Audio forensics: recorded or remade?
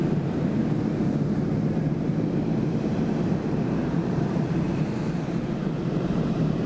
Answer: remade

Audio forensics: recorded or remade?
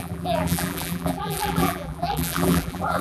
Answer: remade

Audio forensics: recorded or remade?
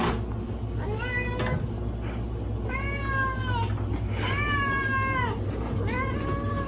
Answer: recorded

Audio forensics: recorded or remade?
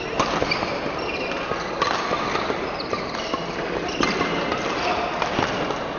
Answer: recorded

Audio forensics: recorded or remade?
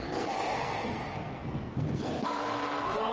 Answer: remade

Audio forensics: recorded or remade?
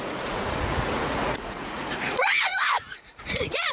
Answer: remade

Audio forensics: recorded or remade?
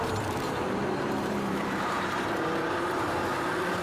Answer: remade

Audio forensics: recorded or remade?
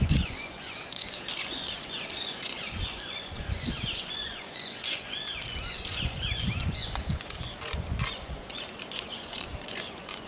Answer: remade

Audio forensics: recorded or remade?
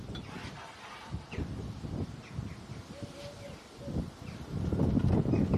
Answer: recorded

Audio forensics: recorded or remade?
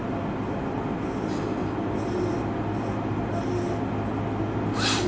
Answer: recorded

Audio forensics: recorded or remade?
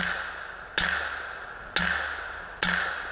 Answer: recorded